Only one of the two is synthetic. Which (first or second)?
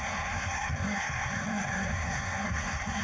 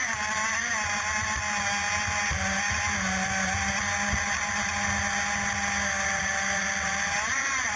first